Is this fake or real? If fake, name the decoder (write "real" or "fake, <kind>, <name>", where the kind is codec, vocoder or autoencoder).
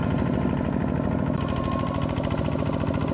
real